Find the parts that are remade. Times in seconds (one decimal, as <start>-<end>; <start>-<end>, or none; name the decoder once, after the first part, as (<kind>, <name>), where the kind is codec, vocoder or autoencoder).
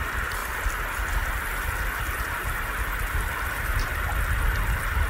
0.0-0.4 (vocoder, BigVGAN v2); 3.5-4.1